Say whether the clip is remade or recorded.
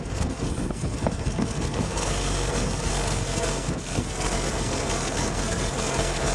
remade